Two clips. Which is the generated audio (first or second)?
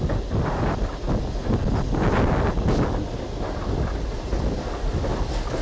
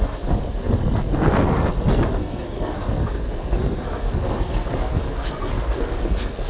second